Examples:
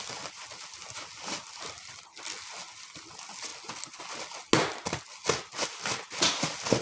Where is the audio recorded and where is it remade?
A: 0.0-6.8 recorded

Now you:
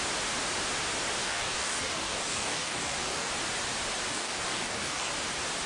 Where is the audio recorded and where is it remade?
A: 0.0-1.2 recorded; 1.2-3.3 remade; 3.3-4.1 recorded; 4.1-5.1 remade; 5.1-5.7 recorded

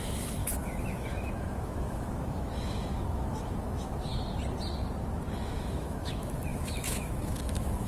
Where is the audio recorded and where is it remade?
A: 0.0-4.1 remade; 4.1-5.3 recorded; 5.3-7.9 remade

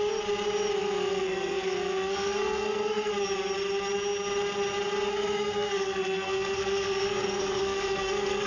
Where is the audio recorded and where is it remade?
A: 0.0-0.8 recorded; 0.8-3.1 remade; 3.1-5.1 recorded; 5.1-8.5 remade

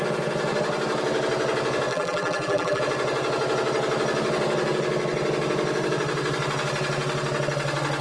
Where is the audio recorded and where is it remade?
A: 0.0-1.9 recorded; 1.9-2.8 remade; 2.8-8.0 recorded

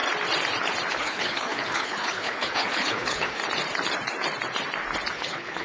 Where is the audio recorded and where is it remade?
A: 0.0-0.9 recorded; 0.9-3.4 remade; 3.4-5.1 recorded; 5.1-5.6 remade